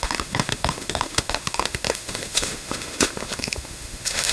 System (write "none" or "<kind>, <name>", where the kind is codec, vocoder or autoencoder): autoencoder, DAC-VAE